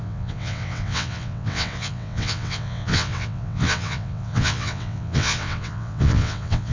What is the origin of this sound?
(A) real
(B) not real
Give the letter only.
B